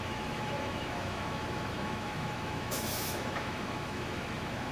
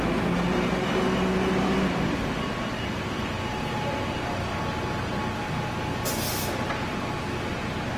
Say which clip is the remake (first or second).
first